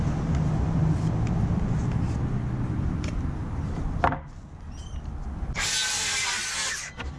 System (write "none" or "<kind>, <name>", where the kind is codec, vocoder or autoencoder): none